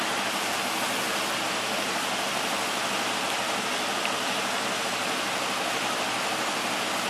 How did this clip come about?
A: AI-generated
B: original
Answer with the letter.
B